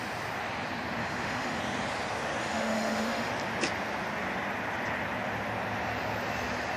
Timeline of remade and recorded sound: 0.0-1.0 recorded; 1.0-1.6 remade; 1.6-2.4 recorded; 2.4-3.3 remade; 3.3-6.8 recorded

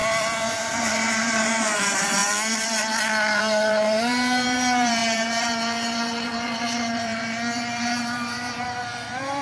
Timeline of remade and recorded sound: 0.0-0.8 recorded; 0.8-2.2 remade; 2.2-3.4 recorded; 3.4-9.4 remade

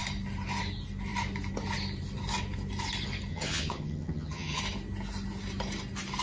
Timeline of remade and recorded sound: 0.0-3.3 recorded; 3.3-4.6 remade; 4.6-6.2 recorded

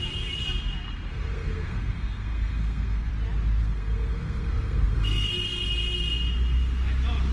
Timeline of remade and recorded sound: 0.0-1.1 recorded; 1.1-3.1 remade; 3.1-3.6 recorded; 3.6-5.3 remade; 5.3-7.3 recorded